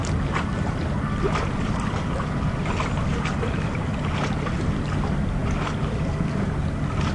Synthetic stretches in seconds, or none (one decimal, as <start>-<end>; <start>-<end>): 0.0-3.8